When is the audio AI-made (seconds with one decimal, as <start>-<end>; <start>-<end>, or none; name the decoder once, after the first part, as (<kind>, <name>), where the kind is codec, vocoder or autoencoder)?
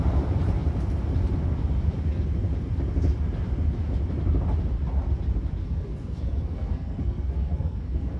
5.6-8.2 (codec, SNAC)